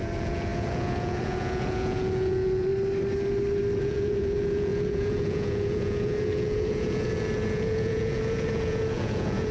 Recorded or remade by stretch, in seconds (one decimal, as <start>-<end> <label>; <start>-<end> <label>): 0.0-2.7 remade; 2.7-3.8 recorded; 3.8-9.5 remade